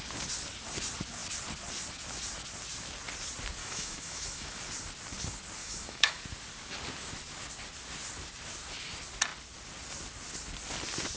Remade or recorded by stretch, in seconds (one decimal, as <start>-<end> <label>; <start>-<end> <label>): 0.0-3.6 recorded; 3.6-4.6 remade; 4.6-5.6 recorded; 5.6-6.2 remade; 6.2-11.2 recorded